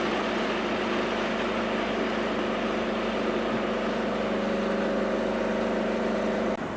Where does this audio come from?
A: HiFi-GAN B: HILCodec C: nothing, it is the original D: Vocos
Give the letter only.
C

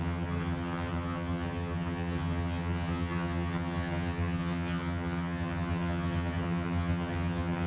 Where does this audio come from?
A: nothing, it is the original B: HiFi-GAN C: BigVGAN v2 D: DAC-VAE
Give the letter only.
B